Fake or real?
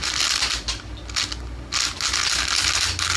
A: real